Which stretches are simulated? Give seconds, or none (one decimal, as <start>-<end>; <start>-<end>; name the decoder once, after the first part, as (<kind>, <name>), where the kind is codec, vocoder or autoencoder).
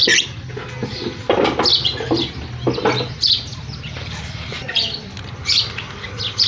none